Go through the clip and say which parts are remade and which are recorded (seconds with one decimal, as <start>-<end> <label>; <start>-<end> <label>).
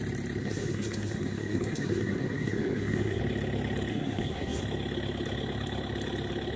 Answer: 0.0-0.4 recorded; 0.4-3.2 remade; 3.2-3.9 recorded; 3.9-4.6 remade; 4.6-6.6 recorded